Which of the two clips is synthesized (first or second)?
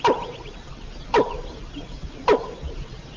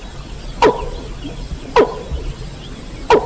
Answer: first